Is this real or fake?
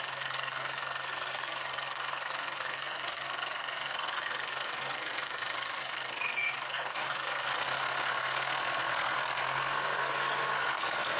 fake